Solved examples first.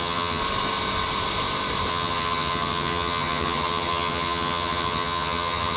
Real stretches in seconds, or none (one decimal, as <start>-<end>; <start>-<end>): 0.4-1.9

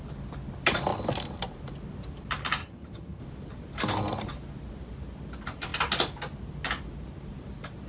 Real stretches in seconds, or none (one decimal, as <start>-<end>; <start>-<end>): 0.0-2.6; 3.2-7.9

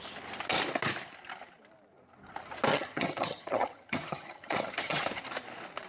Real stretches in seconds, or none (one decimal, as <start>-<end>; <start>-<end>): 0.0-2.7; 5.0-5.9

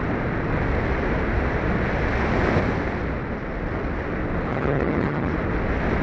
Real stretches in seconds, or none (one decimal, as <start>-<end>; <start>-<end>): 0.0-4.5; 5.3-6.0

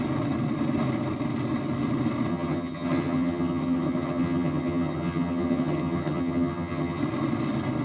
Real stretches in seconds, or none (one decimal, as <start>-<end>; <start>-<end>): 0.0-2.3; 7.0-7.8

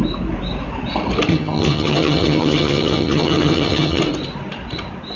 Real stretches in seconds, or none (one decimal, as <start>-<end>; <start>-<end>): 0.0-1.3; 4.0-5.2